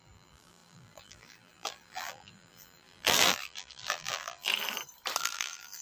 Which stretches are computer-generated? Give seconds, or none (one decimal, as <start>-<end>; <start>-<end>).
0.0-4.5; 5.2-5.8